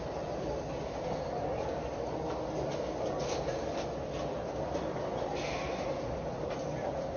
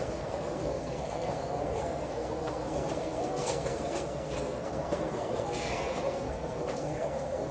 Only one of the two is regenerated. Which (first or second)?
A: second